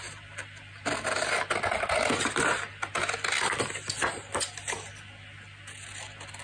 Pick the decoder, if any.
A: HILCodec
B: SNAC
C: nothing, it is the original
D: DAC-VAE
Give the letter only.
C